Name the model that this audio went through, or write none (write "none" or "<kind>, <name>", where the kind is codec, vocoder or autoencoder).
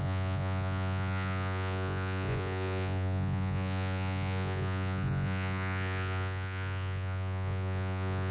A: vocoder, Vocos